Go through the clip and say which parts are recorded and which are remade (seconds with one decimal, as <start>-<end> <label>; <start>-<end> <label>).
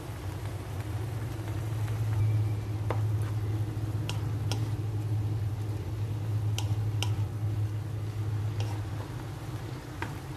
0.0-10.4 recorded